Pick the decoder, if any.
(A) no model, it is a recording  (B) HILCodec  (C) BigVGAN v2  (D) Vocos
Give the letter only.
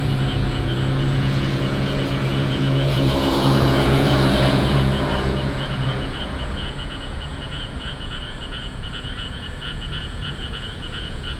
D